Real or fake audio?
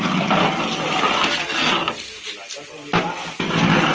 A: real